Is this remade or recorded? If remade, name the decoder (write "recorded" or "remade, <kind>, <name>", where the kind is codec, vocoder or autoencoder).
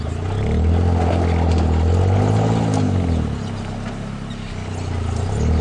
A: recorded